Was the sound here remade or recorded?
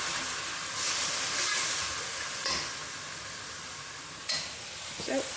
recorded